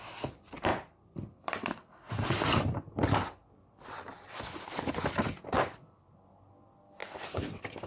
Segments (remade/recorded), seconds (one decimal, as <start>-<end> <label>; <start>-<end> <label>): 0.0-0.7 recorded; 0.7-2.1 remade; 2.1-7.0 recorded; 7.0-7.9 remade